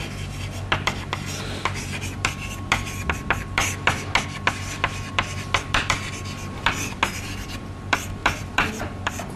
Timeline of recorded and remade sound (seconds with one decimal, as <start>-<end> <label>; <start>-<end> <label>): 0.0-9.4 recorded